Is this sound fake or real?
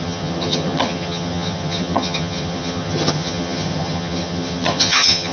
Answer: fake